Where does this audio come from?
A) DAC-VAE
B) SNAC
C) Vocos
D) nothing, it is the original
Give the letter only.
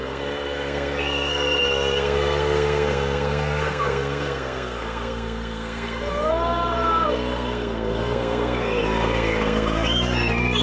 B